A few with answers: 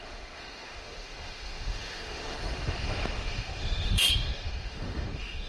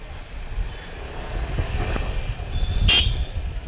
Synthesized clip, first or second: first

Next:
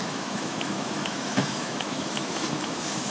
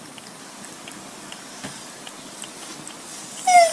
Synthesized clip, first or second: first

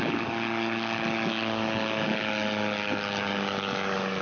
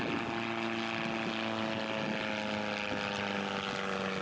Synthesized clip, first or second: first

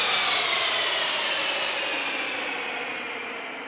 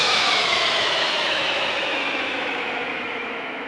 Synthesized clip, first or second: second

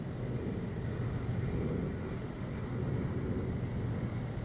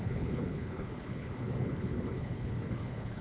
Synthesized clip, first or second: second